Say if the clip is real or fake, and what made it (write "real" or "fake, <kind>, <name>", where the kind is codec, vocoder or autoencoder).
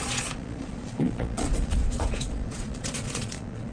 fake, vocoder, Vocos